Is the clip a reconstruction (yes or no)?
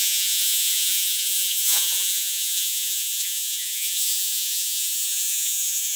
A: yes